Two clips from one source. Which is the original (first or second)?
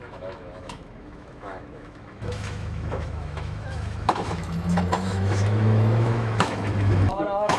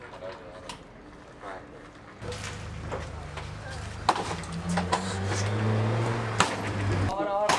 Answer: second